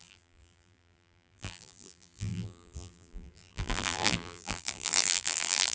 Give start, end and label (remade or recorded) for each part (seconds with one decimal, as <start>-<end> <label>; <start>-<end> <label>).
0.0-5.7 remade